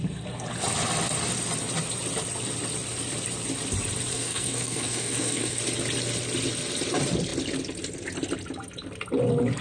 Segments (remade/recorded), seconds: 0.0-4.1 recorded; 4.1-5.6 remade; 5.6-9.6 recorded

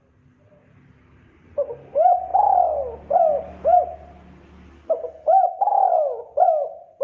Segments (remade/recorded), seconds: 0.0-7.0 recorded

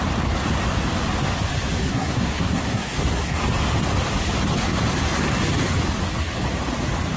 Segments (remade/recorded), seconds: 0.0-1.9 recorded; 1.9-3.4 remade; 3.4-7.2 recorded

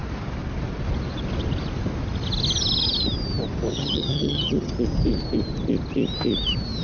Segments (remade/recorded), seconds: 0.0-3.7 recorded; 3.7-4.7 remade; 4.7-6.8 recorded

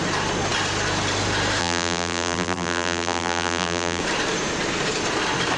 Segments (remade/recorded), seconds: 0.0-1.6 recorded; 1.6-4.0 remade; 4.0-5.6 recorded

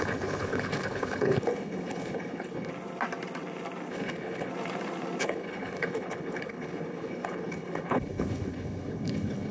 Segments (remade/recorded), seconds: 0.0-2.7 remade; 2.7-3.9 recorded; 3.9-4.5 remade; 4.5-5.2 recorded; 5.2-9.5 remade

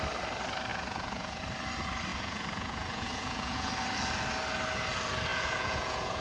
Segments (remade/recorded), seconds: 0.0-0.7 recorded; 0.7-1.4 remade; 1.4-2.1 recorded; 2.1-3.7 remade; 3.7-5.3 recorded; 5.3-6.2 remade

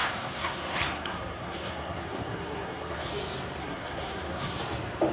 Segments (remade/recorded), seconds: 0.0-3.1 remade; 3.1-3.6 recorded; 3.6-4.6 remade; 4.6-5.1 recorded